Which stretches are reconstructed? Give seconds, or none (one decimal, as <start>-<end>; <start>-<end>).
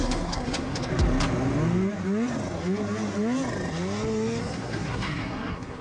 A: 0.0-0.9; 4.4-5.8